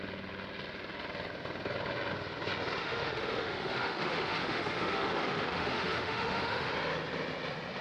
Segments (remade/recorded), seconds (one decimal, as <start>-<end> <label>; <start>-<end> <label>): 0.0-2.8 recorded; 2.8-6.7 remade; 6.7-7.8 recorded